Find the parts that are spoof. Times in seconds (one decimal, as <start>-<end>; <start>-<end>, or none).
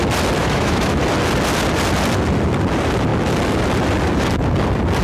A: 0.4-1.0